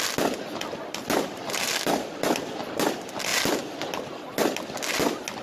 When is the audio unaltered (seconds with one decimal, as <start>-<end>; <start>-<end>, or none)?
0.0-5.4